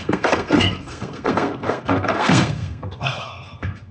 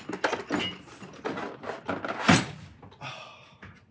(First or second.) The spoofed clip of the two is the first